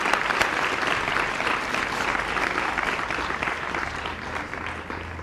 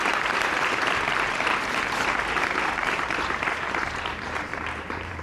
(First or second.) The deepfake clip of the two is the second